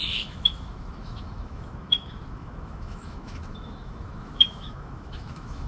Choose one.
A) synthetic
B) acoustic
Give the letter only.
A